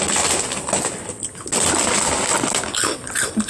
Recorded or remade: recorded